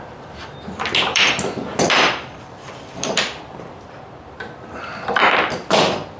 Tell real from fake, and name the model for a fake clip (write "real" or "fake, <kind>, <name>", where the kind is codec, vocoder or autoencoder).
fake, vocoder, BigVGAN v2